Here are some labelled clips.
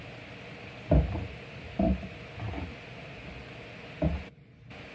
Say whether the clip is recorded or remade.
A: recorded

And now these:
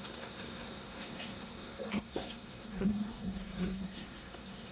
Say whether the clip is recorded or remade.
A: remade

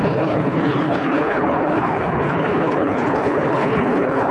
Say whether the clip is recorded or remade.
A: remade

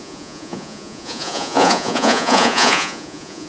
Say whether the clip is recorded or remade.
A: remade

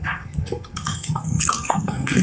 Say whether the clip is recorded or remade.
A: remade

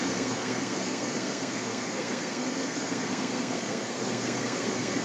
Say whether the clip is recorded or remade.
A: remade